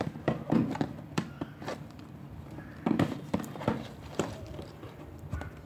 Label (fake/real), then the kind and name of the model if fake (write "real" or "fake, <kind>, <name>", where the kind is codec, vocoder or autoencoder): fake, vocoder, BigVGAN v2